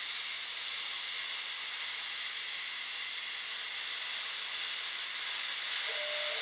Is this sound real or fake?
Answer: real